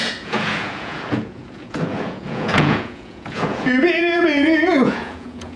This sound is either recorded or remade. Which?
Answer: remade